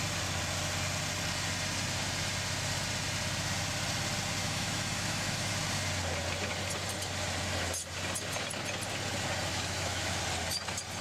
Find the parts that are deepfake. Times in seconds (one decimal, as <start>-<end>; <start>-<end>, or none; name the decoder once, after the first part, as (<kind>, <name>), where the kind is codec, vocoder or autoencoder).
4.4-5.5 (autoencoder, DAC-VAE); 9.5-10.2

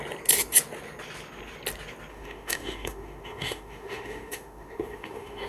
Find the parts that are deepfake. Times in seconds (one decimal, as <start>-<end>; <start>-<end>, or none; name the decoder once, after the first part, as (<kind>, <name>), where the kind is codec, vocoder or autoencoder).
2.1-5.5 (autoencoder, DAC-VAE)

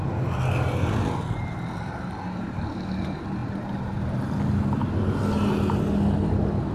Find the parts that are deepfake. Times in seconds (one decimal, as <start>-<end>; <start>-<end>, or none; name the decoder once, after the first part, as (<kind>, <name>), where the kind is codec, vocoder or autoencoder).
none

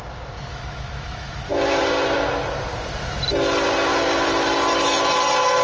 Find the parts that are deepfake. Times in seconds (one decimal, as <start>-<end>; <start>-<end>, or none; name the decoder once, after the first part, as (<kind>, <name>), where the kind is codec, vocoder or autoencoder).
0.5-1.8 (autoencoder, DAC-VAE)

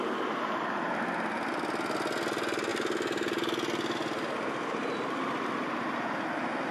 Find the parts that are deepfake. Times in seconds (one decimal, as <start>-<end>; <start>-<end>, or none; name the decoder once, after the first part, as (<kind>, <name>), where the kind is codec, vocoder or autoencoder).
none